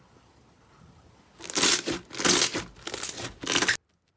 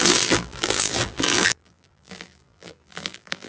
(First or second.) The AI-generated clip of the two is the second